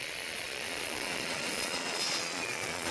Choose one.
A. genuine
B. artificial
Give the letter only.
B